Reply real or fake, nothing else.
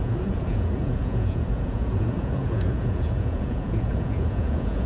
fake